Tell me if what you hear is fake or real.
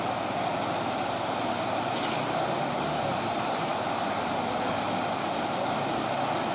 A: real